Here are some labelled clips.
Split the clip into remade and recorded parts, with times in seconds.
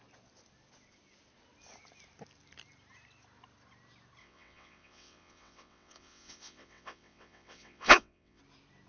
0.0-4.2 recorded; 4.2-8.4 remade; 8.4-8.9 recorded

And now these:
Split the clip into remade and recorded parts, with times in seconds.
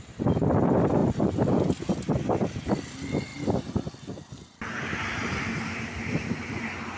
0.0-7.0 recorded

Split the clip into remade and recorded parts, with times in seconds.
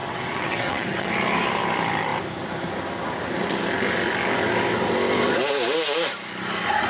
0.0-1.1 remade; 1.1-6.9 recorded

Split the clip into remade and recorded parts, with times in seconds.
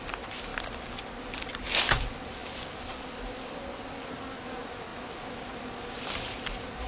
0.0-6.9 recorded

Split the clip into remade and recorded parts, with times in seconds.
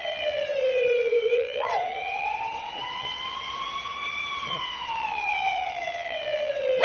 0.0-6.8 remade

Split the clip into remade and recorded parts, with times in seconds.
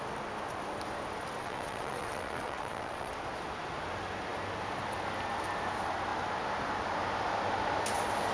0.0-1.4 recorded; 1.4-3.1 remade; 3.1-8.3 recorded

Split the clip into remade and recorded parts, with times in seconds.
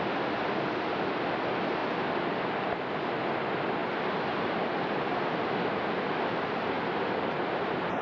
0.0-8.0 recorded